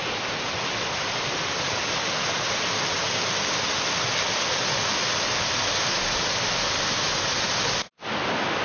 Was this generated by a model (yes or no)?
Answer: no